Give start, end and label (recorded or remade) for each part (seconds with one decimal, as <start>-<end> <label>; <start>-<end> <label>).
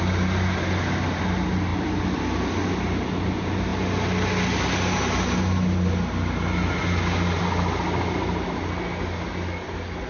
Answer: 0.0-10.1 recorded